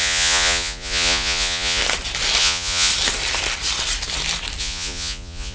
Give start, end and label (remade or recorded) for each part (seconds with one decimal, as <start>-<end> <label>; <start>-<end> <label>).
0.0-1.8 remade; 1.8-2.4 recorded; 2.4-2.9 remade; 2.9-4.6 recorded; 4.6-5.5 remade